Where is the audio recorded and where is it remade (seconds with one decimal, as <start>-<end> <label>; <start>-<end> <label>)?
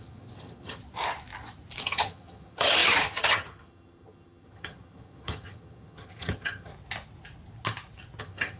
0.0-0.8 remade; 0.8-1.8 recorded; 1.8-6.7 remade; 6.7-8.2 recorded; 8.2-8.6 remade